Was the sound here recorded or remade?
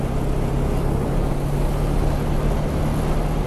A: recorded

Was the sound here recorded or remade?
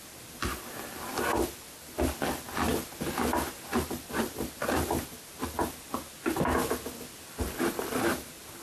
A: recorded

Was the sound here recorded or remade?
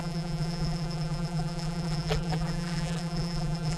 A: remade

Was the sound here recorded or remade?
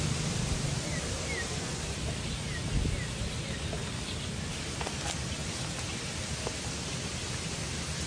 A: recorded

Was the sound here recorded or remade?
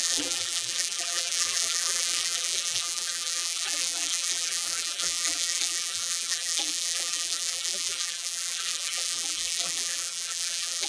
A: remade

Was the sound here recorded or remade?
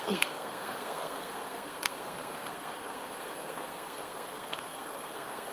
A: remade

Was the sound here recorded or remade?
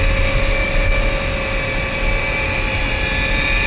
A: recorded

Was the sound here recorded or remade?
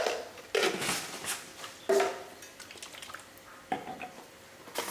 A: recorded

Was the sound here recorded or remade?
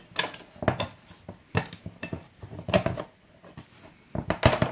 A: recorded